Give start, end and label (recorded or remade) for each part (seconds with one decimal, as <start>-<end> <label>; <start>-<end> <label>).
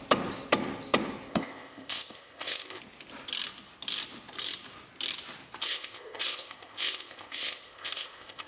0.0-1.3 recorded; 1.3-2.8 remade; 2.8-5.6 recorded; 5.6-8.5 remade